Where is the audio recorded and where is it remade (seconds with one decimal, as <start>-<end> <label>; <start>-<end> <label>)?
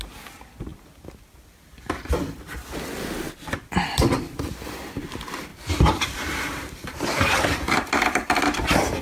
0.0-5.5 recorded; 5.5-9.0 remade